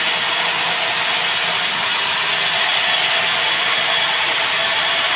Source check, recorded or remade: recorded